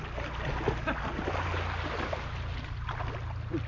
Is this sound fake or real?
real